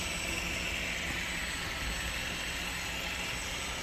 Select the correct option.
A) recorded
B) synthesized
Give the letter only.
A